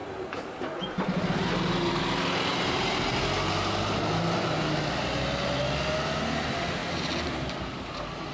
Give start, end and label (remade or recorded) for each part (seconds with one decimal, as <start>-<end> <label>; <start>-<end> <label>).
0.0-1.5 remade; 1.5-2.5 recorded; 2.5-3.1 remade; 3.1-6.8 recorded; 6.8-8.3 remade